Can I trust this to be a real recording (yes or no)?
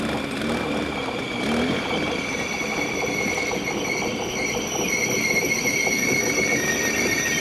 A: yes